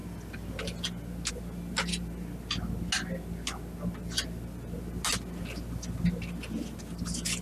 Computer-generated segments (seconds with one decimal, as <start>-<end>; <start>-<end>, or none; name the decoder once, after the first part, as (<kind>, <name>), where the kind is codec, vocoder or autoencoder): none